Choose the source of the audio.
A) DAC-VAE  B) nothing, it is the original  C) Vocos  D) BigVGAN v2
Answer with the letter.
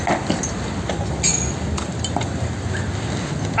B